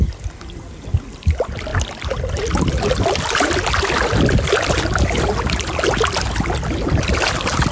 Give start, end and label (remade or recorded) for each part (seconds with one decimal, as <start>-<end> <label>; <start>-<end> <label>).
0.0-7.7 recorded